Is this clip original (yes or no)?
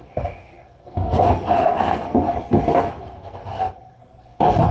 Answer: no